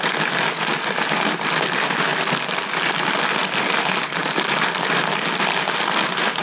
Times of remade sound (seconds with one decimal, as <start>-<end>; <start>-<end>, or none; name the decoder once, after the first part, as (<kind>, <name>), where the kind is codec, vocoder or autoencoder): none